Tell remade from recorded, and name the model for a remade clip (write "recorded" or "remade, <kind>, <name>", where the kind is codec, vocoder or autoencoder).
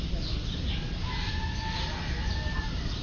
recorded